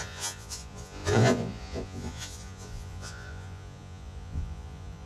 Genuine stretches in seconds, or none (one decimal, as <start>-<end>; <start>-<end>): none